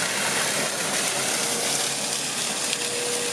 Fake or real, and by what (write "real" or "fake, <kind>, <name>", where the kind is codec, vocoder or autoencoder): real